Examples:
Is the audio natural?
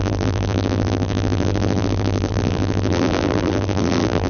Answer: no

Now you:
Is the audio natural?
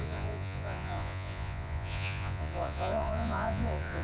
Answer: no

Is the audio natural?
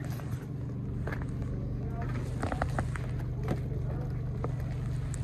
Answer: yes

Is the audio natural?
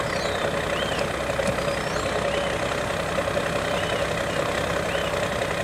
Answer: yes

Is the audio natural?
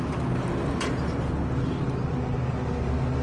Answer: yes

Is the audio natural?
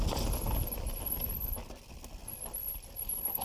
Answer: yes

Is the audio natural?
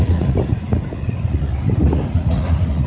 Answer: no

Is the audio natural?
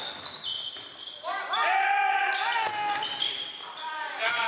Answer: yes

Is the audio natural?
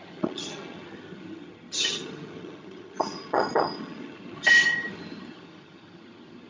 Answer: no